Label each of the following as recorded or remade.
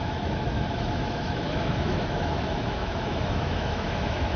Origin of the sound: remade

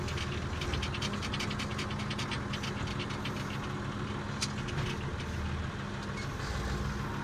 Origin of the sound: recorded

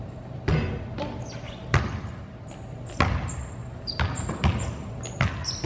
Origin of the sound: recorded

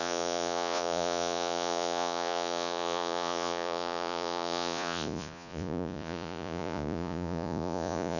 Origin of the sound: remade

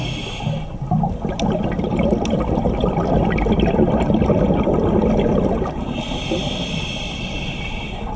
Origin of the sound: recorded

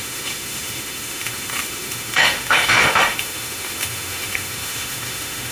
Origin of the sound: remade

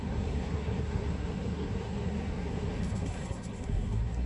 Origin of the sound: remade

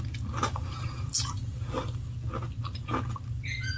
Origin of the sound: recorded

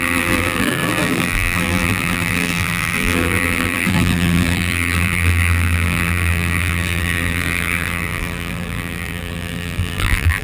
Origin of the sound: remade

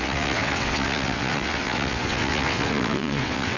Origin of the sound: remade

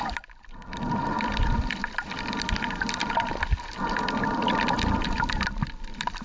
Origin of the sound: remade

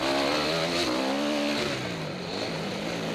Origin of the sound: recorded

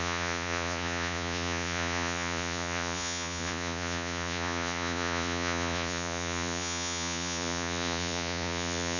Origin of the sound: remade